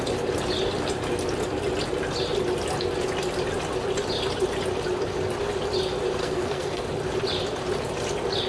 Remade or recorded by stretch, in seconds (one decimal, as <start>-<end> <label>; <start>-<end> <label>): 0.0-6.2 recorded; 6.2-6.8 remade; 6.8-8.5 recorded